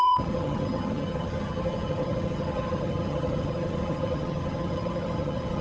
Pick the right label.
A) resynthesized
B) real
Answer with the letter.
A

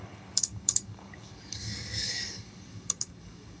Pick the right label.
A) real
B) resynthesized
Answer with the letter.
B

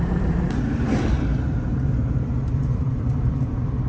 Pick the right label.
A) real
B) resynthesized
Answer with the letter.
B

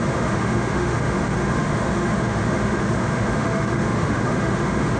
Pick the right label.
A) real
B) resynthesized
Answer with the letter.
B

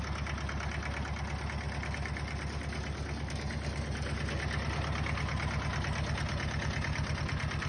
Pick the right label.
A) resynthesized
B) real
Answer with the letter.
B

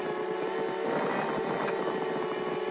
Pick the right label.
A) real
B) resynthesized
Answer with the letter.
A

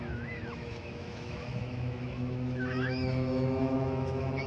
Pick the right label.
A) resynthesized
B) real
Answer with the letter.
A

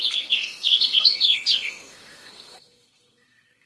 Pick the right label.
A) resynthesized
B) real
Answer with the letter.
A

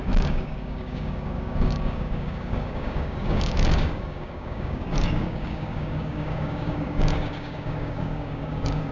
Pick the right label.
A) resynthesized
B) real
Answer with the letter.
A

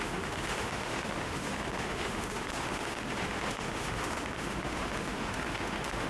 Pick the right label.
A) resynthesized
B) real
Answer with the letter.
A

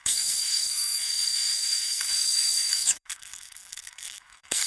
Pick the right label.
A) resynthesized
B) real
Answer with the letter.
A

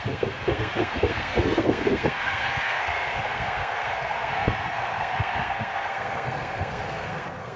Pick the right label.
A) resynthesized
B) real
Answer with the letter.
A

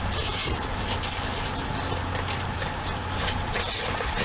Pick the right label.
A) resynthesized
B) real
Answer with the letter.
B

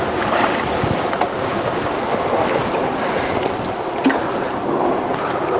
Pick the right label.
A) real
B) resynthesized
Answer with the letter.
A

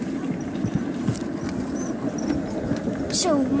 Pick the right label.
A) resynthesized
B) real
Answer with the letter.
B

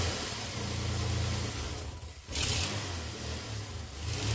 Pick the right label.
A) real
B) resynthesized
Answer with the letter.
A